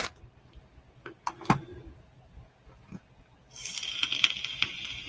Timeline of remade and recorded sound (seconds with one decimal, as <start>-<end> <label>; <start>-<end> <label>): 0.0-5.1 recorded